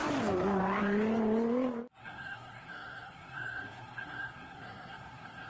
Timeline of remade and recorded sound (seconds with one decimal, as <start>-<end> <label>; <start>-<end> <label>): 0.0-2.0 recorded; 2.0-5.5 remade